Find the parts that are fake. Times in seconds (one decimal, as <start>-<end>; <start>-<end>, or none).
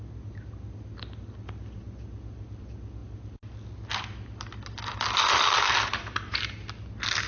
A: none